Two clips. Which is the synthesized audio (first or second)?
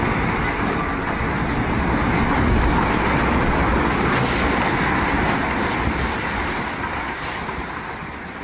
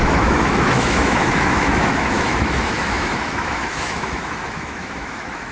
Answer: second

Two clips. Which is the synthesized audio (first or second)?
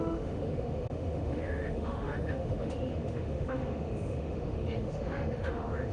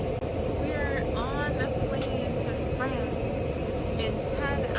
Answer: first